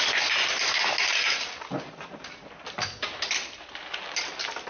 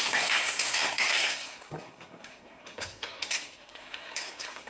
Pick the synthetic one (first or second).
second